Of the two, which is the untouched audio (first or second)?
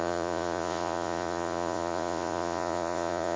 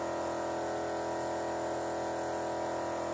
second